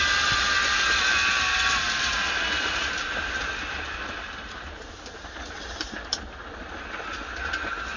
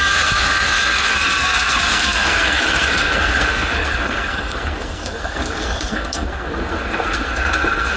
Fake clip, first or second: second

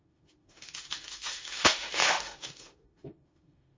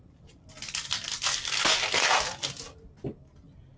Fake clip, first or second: first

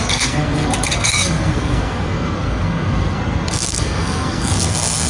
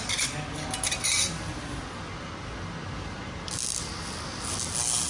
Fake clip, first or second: first